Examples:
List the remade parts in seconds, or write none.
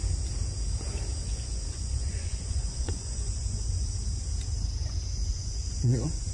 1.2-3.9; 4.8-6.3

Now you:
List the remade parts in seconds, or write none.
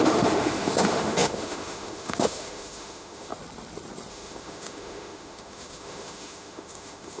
0.0-3.3; 4.1-7.2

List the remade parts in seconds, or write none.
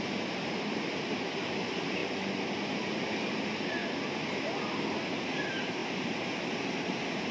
none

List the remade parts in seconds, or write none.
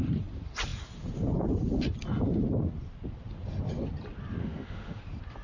4.4-5.0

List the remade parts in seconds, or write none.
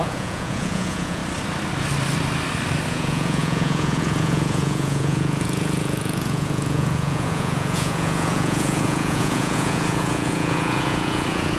0.0-1.2; 2.9-11.6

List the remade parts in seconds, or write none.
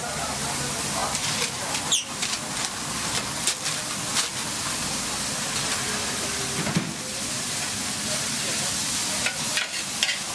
none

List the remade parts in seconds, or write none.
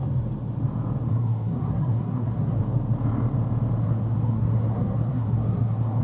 1.1-2.6; 3.8-6.0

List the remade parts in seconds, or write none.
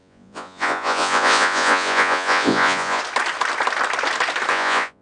0.0-3.0; 4.5-5.0